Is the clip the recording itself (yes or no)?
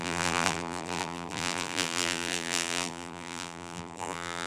no